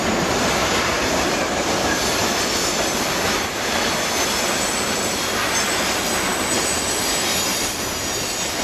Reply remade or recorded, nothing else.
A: recorded